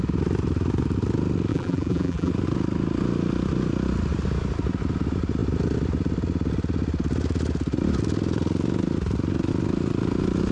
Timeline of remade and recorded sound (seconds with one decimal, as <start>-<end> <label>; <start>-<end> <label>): 0.0-1.5 recorded; 1.5-2.3 remade; 2.3-10.5 recorded